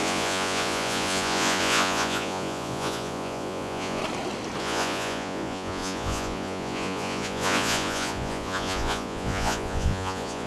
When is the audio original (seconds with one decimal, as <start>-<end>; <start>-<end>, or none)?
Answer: 4.0-4.6